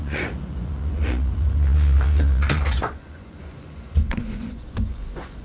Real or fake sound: fake